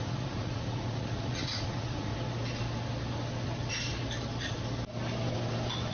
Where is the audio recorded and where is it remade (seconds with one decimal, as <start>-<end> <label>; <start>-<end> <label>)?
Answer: 0.0-2.1 remade; 2.1-5.9 recorded